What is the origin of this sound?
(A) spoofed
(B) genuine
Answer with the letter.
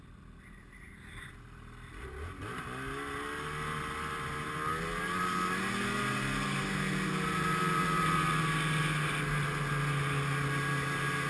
B